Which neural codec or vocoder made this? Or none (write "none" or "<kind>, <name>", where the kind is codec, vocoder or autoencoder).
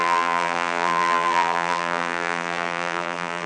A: vocoder, BigVGAN v2